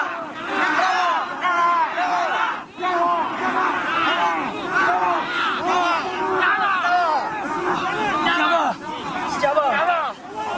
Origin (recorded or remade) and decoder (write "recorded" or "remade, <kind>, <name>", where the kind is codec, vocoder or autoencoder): recorded